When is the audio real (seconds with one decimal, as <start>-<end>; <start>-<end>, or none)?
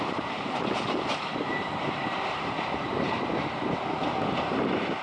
3.9-4.4